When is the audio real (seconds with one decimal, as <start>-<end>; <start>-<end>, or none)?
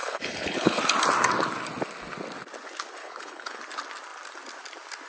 0.8-3.0; 3.6-5.1